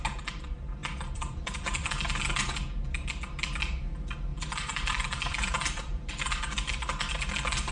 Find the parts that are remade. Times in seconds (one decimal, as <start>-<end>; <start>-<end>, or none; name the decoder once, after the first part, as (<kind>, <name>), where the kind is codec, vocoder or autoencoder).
0.8-2.3 (vocoder, BigVGAN v2); 4.3-6.1